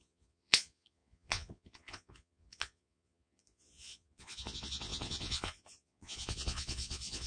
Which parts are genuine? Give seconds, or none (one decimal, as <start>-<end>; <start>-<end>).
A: none